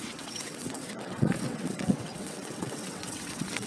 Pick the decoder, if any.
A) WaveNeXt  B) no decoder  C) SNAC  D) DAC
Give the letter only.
A